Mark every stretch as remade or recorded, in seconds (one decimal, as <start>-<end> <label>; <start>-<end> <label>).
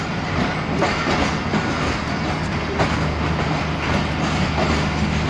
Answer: 0.0-5.3 recorded